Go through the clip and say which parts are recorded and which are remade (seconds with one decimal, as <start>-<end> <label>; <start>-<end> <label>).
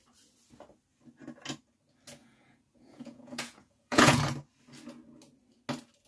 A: 0.0-2.2 recorded; 2.2-4.2 remade; 4.2-6.1 recorded